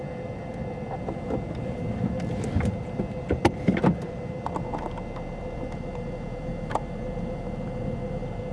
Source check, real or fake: real